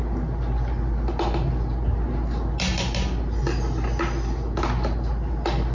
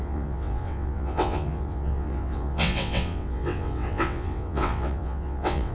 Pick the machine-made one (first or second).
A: second